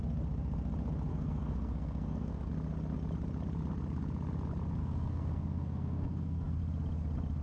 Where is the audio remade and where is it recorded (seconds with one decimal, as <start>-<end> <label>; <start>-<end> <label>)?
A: 0.0-1.1 recorded; 1.1-2.5 remade; 2.5-4.8 recorded; 4.8-6.6 remade; 6.6-7.4 recorded